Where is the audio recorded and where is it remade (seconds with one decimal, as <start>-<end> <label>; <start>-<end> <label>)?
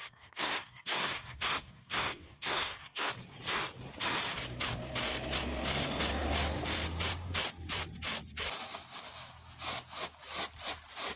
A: 0.0-3.1 remade; 3.1-11.2 recorded